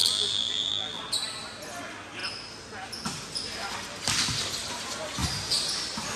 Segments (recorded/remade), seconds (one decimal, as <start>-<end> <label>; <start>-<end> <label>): 0.0-1.0 remade; 1.0-6.2 recorded